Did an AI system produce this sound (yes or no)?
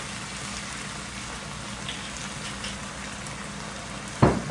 no